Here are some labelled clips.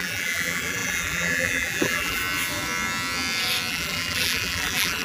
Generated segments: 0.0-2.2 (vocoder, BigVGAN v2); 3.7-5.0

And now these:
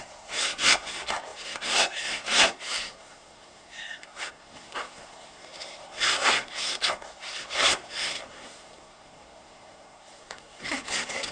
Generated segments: 0.0-11.3 (codec, SNAC)

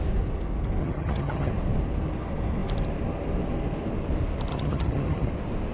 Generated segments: 0.8-1.5 (vocoder, HiFi-GAN); 4.5-5.3

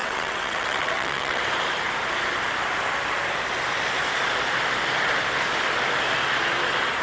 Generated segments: 0.0-1.4 (vocoder, WaveNeXt)

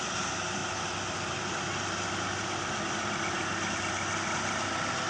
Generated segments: none

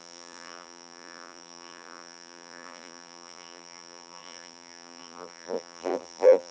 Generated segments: 0.0-6.5 (vocoder, BigVGAN v2)

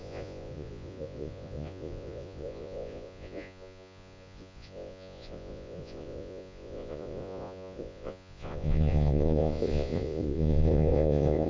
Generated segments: 0.0-11.5 (vocoder, Vocos)

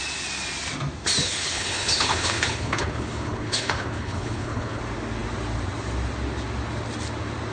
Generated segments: 1.2-4.8 (codec, HILCodec)